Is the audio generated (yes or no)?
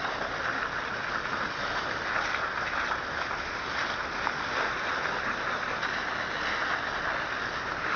no